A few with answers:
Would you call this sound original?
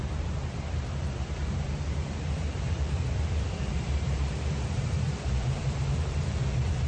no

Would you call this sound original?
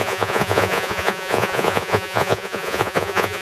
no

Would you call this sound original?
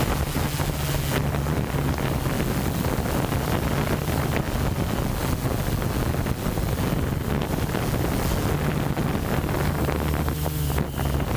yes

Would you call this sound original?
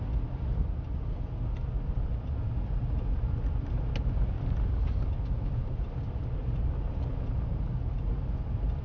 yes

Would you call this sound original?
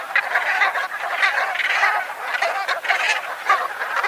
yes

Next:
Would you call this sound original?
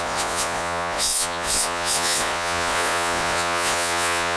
no